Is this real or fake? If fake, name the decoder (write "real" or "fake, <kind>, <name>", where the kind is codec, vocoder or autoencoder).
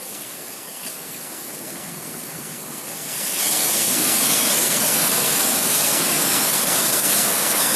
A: fake, codec, SNAC